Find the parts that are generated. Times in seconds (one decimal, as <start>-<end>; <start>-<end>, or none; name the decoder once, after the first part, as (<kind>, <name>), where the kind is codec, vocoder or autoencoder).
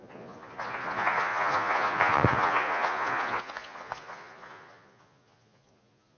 0.0-6.2 (vocoder, Vocos)